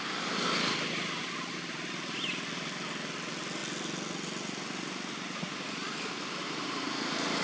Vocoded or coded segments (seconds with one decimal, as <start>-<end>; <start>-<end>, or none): 0.0-3.6; 6.3-7.4